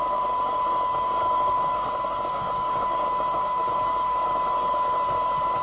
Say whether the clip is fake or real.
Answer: fake